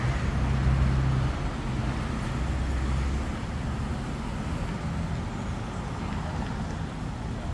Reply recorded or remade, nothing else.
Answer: recorded